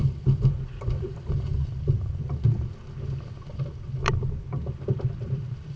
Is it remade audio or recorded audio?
remade